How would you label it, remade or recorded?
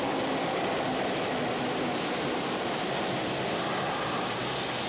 recorded